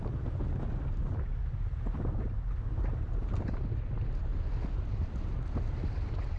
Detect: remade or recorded recorded